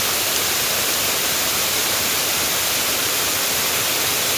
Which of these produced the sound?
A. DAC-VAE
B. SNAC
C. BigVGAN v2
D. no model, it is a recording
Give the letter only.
D